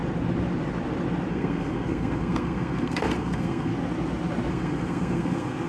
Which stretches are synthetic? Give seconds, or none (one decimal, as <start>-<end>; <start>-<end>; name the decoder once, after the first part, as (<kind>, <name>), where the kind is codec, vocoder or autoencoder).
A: 1.3-3.7 (codec, SNAC); 4.5-5.7